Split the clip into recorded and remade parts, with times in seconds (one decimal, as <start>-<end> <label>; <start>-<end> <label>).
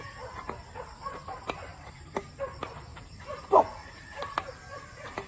0.0-1.7 recorded; 1.7-2.4 remade; 2.4-2.9 recorded; 2.9-4.2 remade; 4.2-5.3 recorded